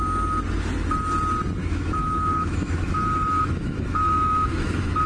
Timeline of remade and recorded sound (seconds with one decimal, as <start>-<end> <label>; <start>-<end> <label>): 0.0-1.6 recorded; 1.6-5.1 remade

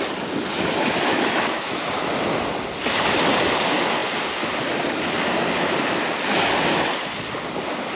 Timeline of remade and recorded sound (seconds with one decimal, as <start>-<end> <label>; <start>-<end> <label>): 0.0-1.1 recorded; 1.1-2.1 remade; 2.1-8.0 recorded